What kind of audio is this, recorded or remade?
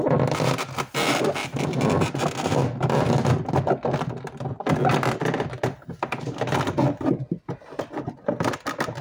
recorded